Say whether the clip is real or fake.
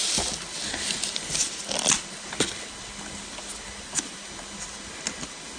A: real